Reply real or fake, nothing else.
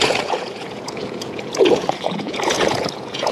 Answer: fake